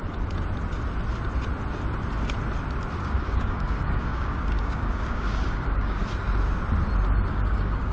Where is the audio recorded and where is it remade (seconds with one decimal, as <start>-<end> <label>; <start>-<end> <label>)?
0.0-3.0 recorded; 3.0-6.0 remade; 6.0-7.3 recorded; 7.3-7.9 remade